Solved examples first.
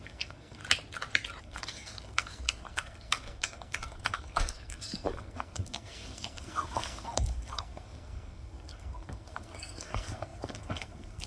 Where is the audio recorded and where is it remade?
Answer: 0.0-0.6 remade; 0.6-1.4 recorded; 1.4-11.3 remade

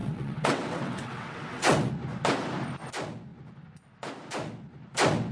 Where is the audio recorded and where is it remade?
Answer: 0.0-1.9 remade; 1.9-5.3 recorded

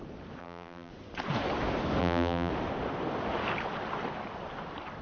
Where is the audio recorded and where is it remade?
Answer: 0.0-0.4 recorded; 0.4-0.9 remade; 0.9-2.0 recorded; 2.0-2.5 remade; 2.5-5.0 recorded